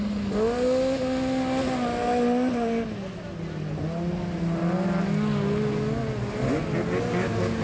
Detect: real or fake real